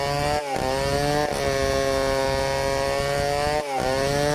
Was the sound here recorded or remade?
recorded